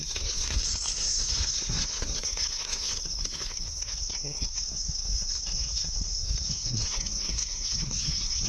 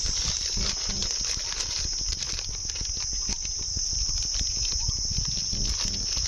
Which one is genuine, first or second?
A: second